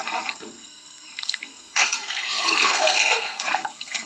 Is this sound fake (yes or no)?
yes